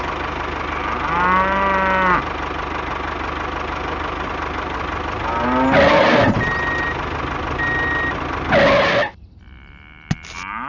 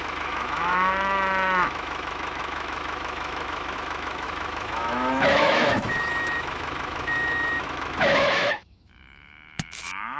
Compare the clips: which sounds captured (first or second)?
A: first